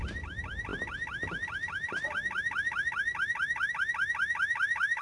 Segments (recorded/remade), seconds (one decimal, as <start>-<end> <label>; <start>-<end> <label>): 0.0-5.0 recorded

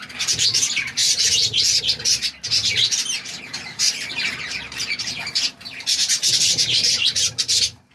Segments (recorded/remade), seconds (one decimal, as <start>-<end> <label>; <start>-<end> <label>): 0.0-2.6 recorded; 2.6-7.3 remade; 7.3-7.9 recorded